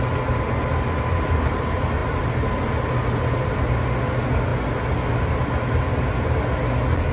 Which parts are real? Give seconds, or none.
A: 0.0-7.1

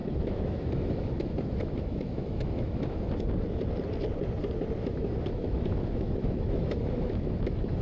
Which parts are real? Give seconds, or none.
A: 3.0-4.8

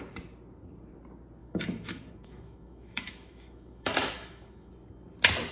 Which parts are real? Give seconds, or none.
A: 0.0-1.4; 4.7-5.5

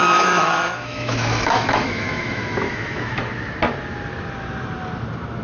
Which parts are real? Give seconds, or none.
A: 3.2-5.4